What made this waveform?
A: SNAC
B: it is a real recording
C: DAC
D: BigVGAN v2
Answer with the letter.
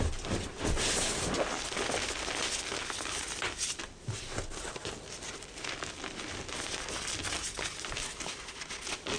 B